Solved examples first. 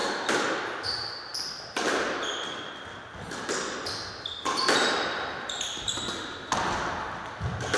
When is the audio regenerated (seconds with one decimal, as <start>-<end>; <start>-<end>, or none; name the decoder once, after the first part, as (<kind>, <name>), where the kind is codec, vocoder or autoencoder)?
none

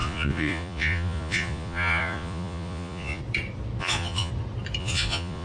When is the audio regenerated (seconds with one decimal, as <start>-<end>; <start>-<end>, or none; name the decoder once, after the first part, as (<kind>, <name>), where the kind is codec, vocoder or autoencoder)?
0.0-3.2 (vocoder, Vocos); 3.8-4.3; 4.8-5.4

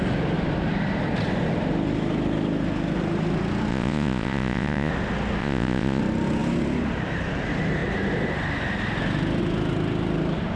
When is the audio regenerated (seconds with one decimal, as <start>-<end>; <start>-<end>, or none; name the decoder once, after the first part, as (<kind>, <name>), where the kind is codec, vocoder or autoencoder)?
3.7-4.9 (vocoder, Vocos); 5.4-6.0

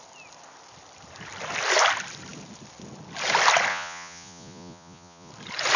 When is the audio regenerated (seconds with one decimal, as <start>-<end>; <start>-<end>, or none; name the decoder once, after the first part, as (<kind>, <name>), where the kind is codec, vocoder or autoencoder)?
3.7-5.3 (vocoder, Vocos)

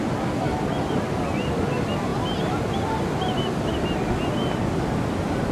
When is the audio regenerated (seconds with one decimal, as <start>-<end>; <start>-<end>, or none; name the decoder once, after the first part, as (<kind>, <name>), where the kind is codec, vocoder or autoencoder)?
none